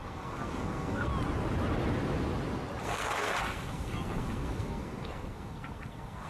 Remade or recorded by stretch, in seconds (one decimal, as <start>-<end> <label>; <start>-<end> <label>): 0.0-1.1 remade; 1.1-2.8 recorded; 2.8-6.3 remade